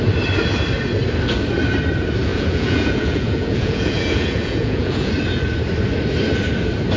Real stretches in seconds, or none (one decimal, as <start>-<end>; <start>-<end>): 0.0-2.3; 5.1-7.0